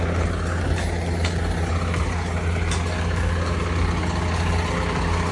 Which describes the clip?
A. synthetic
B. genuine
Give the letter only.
B